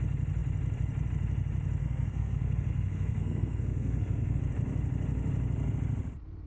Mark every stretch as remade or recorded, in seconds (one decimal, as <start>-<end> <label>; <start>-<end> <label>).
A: 0.0-1.8 recorded; 1.8-4.4 remade; 4.4-6.5 recorded